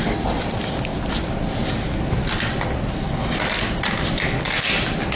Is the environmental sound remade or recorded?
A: recorded